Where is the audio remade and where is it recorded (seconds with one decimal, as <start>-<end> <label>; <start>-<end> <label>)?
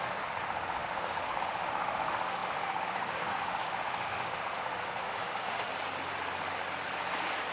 0.0-5.7 remade; 5.7-7.5 recorded